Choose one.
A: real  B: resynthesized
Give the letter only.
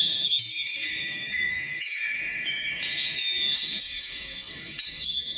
B